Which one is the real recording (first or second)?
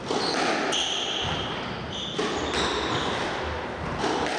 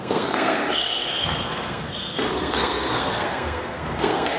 first